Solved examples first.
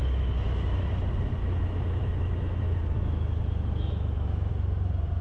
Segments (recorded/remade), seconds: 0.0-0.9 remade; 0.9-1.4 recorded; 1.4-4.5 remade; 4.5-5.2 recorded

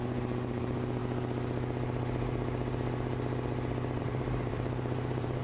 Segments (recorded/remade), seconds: 0.0-1.0 remade; 1.0-4.0 recorded; 4.0-5.4 remade

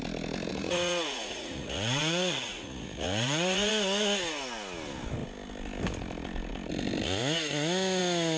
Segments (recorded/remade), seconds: 0.0-0.5 recorded; 0.5-3.7 remade; 3.7-8.4 recorded

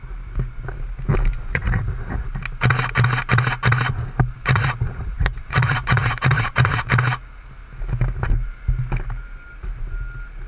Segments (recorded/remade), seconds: 0.0-1.5 recorded; 1.5-2.3 remade; 2.3-4.4 recorded; 4.4-6.9 remade; 6.9-10.5 recorded